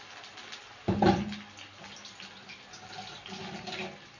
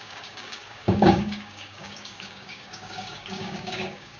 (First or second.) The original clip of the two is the first